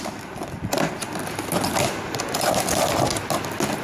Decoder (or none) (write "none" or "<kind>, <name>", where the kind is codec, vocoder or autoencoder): none